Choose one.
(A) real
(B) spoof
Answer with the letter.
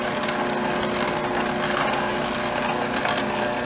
A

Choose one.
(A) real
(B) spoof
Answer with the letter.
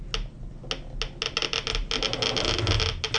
A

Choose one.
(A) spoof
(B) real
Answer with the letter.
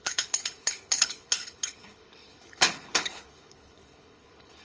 A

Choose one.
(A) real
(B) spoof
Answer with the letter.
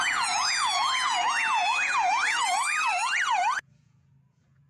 B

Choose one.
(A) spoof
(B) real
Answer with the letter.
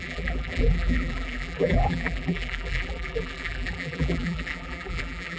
A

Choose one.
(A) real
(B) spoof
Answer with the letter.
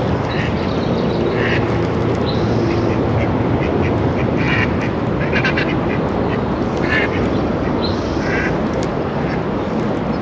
A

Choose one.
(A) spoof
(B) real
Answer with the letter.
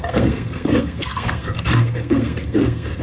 A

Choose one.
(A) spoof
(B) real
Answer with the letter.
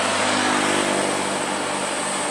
B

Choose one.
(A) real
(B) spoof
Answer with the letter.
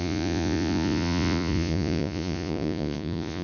B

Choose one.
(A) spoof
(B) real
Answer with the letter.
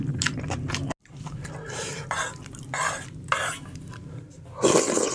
B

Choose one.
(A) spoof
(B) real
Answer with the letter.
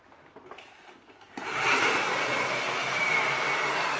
B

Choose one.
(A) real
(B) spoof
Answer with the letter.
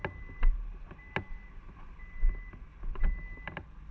A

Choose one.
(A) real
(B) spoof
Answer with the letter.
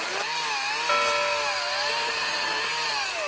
A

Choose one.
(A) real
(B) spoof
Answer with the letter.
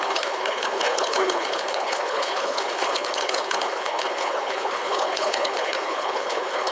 B